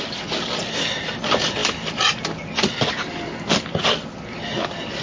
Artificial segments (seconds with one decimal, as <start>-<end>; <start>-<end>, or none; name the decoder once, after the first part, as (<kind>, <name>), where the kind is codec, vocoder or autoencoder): none